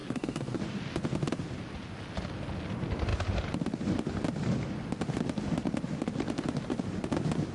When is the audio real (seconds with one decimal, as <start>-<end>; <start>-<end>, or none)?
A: 0.6-7.5